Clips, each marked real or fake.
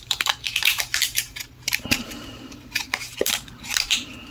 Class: fake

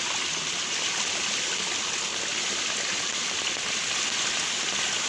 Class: real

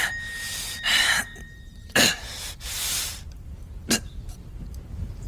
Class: fake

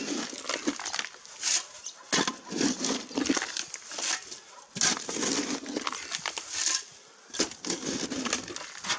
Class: real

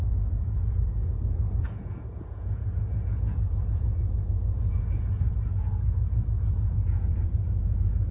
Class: fake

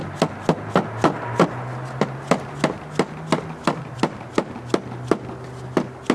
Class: real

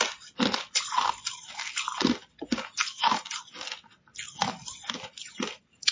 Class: real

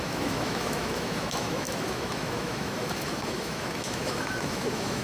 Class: fake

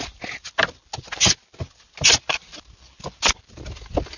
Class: real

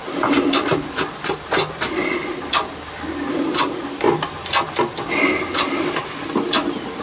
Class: real